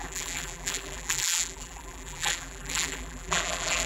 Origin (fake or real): fake